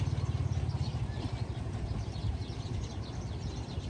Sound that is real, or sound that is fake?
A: real